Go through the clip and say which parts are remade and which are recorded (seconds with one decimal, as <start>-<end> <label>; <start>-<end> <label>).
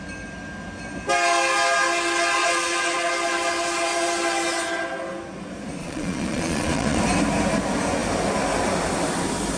0.0-2.4 recorded; 2.4-3.1 remade; 3.1-5.8 recorded; 5.8-7.0 remade; 7.0-9.6 recorded